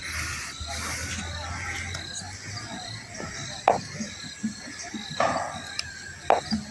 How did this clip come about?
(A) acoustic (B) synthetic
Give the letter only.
A